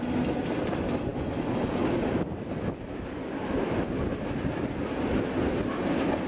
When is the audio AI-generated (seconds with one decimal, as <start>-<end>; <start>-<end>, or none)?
none